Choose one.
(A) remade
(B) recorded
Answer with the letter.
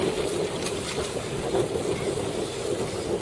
B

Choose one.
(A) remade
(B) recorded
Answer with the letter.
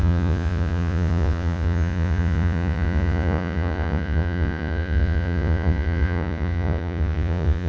A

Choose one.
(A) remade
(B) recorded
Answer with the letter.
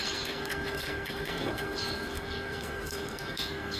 A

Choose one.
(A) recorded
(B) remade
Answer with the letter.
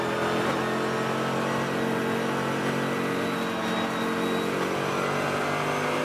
A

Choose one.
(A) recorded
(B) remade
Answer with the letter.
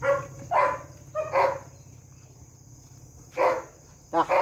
A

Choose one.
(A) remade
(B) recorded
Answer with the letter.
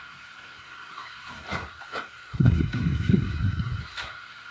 A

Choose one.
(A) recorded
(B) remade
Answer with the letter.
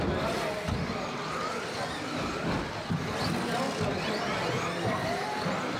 A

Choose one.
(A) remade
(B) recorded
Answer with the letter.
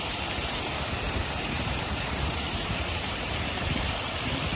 A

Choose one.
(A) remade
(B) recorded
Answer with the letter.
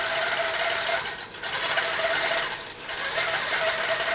B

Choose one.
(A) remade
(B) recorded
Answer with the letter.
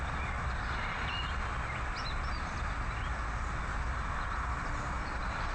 B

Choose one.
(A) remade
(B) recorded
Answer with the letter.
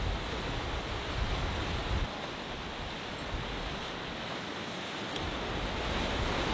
B